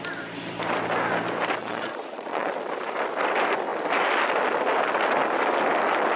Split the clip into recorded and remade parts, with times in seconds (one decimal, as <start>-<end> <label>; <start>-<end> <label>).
0.0-1.6 recorded; 1.6-2.5 remade; 2.5-6.2 recorded